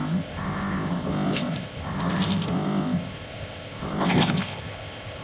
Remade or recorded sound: remade